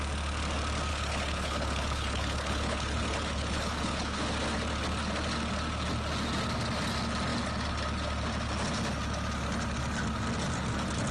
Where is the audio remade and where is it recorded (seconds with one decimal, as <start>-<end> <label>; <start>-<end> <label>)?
0.0-0.9 recorded; 0.9-4.2 remade; 4.2-11.1 recorded